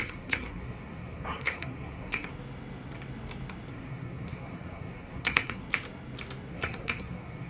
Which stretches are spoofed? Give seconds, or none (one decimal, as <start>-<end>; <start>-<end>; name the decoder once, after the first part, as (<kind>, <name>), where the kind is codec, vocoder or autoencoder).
0.0-2.3 (codec, SNAC); 3.7-5.6; 6.5-7.5